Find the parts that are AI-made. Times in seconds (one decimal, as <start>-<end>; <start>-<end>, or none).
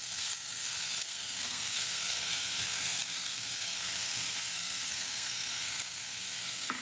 0.0-6.8